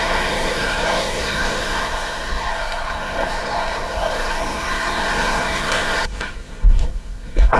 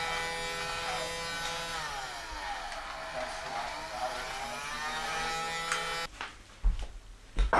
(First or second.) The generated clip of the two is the first